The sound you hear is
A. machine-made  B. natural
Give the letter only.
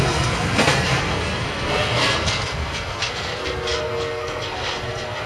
A